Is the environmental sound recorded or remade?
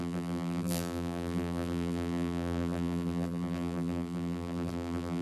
remade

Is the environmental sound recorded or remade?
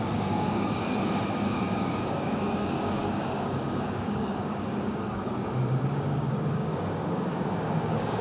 remade